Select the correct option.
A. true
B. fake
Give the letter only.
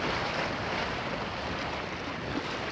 A